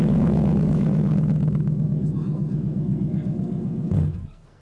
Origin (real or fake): fake